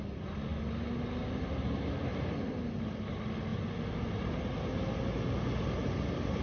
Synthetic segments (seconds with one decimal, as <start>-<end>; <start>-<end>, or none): none